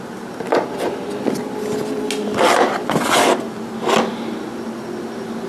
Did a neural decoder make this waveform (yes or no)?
no